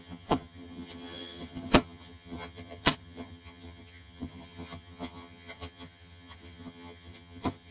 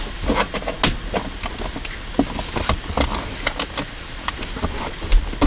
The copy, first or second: first